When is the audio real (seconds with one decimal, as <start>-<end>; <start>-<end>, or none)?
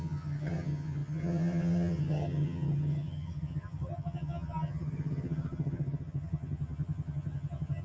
none